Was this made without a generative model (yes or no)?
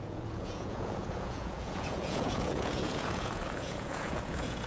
no